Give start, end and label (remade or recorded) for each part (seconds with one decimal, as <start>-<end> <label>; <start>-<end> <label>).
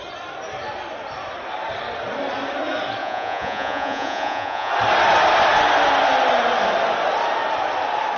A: 0.0-3.0 recorded; 3.0-4.7 remade; 4.7-8.2 recorded